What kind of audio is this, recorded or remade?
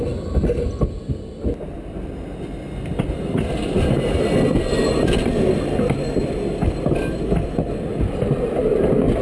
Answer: recorded